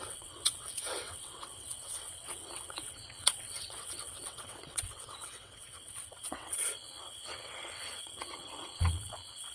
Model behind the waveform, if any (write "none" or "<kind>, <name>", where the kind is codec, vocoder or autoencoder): vocoder, WaveNeXt